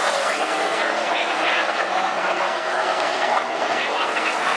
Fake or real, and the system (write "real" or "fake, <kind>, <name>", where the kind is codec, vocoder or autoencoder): fake, codec, SNAC